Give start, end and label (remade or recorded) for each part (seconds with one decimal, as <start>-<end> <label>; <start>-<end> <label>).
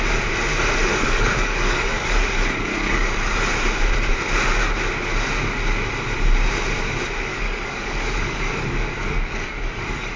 0.0-0.8 recorded; 0.8-3.2 remade; 3.2-7.3 recorded; 7.3-10.2 remade